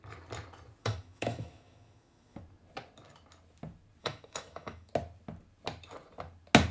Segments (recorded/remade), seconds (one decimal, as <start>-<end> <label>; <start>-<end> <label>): 0.0-0.8 recorded; 0.8-2.4 remade; 2.4-4.0 recorded; 4.0-4.9 remade; 4.9-6.7 recorded